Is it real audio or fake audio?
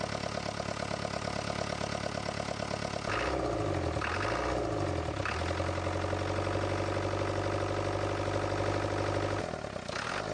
real